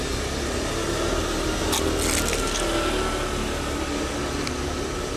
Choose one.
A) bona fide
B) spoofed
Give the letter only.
A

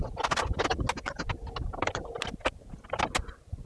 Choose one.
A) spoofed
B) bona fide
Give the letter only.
B